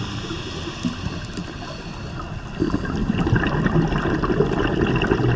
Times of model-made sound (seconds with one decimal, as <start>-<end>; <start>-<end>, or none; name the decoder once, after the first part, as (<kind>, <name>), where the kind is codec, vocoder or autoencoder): none